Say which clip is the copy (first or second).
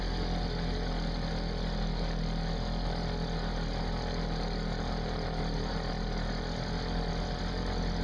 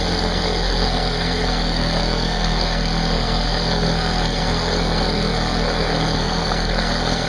second